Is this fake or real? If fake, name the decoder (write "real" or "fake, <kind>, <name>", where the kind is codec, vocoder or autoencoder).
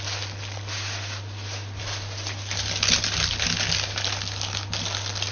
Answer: real